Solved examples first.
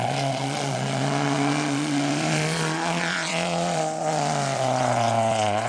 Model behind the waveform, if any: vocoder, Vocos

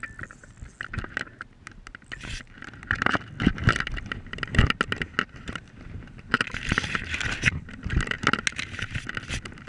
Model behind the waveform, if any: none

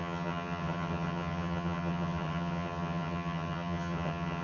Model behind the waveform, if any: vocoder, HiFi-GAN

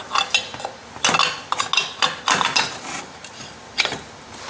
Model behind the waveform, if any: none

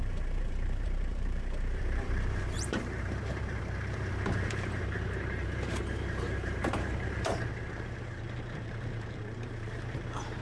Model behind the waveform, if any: vocoder, BigVGAN v2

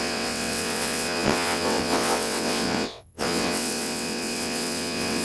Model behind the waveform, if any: vocoder, WaveNeXt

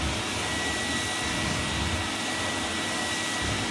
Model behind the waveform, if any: none